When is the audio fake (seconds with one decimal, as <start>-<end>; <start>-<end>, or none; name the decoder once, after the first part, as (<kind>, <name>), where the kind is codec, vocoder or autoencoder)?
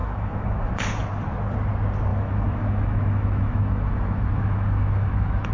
0.0-0.7 (autoencoder, DAC-VAE); 2.1-5.5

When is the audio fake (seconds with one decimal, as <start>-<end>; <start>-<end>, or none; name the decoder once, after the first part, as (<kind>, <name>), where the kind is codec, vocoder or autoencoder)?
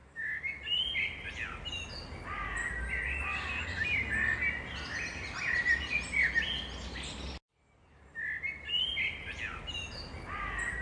0.0-0.6 (autoencoder, DAC-VAE)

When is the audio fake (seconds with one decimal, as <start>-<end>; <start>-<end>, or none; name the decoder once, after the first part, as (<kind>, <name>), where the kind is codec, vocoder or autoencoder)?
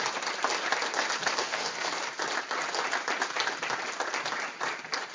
1.4-1.9 (autoencoder, DAC-VAE)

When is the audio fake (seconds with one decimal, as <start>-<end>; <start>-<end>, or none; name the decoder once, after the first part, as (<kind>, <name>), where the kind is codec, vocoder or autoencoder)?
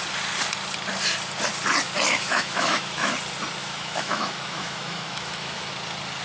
2.1-3.1 (autoencoder, DAC-VAE); 3.6-5.7